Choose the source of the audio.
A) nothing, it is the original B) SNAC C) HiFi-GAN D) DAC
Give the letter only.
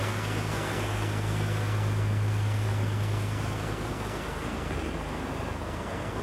B